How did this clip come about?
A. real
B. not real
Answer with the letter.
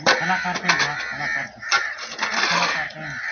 A